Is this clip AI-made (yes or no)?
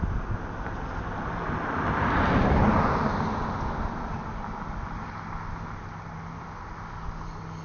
no